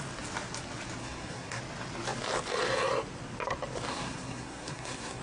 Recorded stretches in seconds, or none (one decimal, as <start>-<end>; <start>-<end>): 0.0-1.0; 1.6-3.9